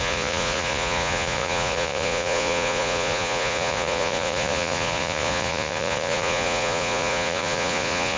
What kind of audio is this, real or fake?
fake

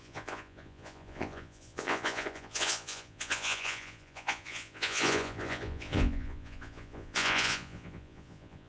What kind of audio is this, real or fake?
fake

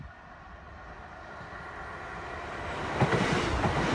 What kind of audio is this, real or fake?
real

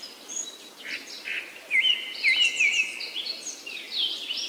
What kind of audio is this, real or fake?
real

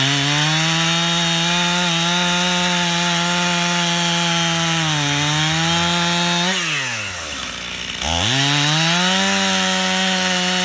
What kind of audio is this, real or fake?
real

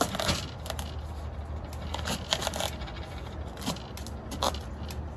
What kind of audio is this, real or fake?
real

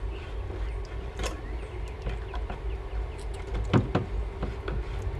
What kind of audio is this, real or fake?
real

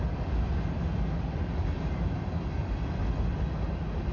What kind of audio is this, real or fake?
real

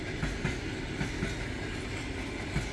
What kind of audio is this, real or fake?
real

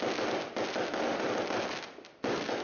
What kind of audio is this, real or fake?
real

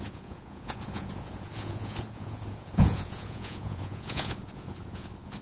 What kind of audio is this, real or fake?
fake